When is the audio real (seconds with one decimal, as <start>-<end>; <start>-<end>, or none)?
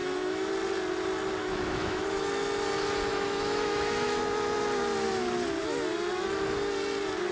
0.5-1.4; 2.0-3.1; 4.2-7.3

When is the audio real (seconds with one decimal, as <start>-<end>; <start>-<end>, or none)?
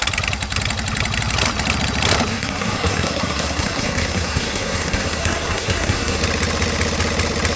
0.0-2.3; 6.2-7.6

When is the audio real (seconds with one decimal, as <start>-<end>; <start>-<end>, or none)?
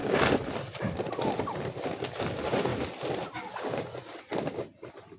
0.0-5.2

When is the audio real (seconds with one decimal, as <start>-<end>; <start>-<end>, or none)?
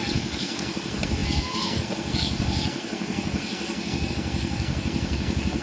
none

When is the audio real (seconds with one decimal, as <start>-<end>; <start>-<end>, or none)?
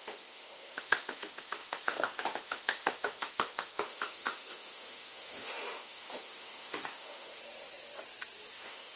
7.4-8.5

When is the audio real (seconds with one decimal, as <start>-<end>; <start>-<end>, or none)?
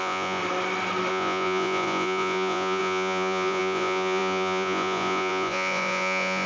0.4-1.1